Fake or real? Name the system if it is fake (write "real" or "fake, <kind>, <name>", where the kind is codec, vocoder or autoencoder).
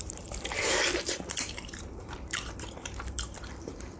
fake, vocoder, BigVGAN v2